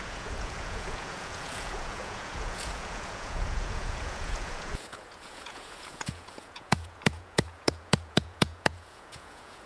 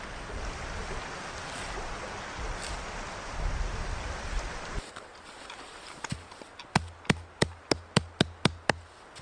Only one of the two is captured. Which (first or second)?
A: second